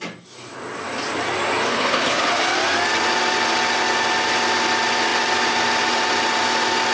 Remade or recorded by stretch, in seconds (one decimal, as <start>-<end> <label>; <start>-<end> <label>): 0.0-1.7 recorded; 1.7-2.3 remade; 2.3-6.9 recorded